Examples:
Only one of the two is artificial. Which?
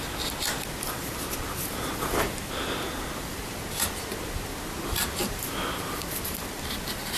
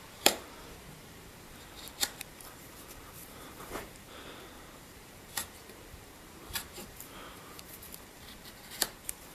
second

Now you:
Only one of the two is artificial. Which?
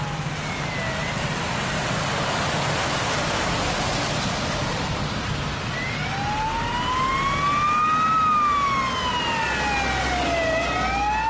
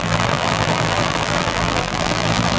second